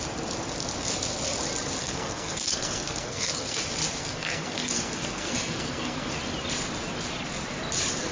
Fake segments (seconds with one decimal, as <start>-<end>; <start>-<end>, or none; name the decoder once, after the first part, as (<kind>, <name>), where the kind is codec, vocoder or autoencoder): 1.8-3.6 (codec, SNAC); 4.0-6.1

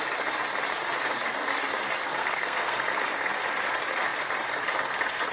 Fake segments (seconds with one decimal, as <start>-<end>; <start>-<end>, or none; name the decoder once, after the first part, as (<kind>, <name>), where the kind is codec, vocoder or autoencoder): 2.2-2.8 (codec, SNAC)